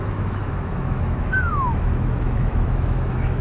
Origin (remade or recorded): remade